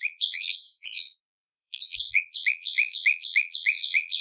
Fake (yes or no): yes